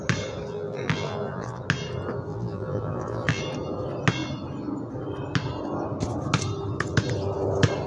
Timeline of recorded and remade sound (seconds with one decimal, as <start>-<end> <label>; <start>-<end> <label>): 0.0-0.5 recorded; 0.5-1.6 remade; 1.6-2.3 recorded; 2.3-3.4 remade; 3.4-7.9 recorded